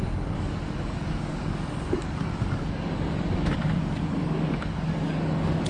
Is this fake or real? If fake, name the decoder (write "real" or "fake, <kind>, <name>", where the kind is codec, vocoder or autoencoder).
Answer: fake, codec, DAC